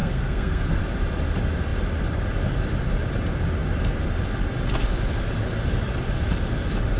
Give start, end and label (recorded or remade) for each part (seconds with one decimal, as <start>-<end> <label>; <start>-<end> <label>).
0.0-0.8 remade; 0.8-7.0 recorded